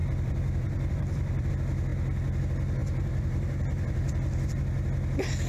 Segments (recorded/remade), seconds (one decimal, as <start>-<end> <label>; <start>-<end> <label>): 0.0-1.5 remade; 1.5-2.8 recorded; 2.8-4.6 remade; 4.6-5.5 recorded